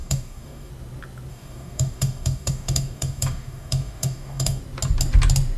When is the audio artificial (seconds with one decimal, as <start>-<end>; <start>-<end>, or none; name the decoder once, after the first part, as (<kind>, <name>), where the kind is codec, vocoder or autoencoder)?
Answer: 0.0-0.7 (codec, DAC); 1.3-4.6